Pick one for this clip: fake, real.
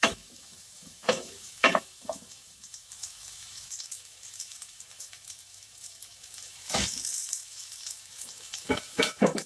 fake